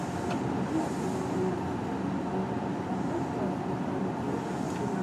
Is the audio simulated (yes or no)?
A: no